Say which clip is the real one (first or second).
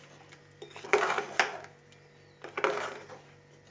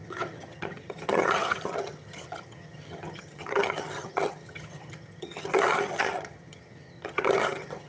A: first